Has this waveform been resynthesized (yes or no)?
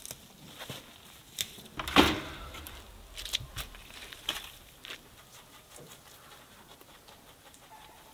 no